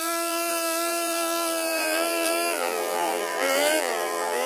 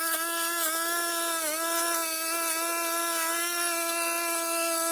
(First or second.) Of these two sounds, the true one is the second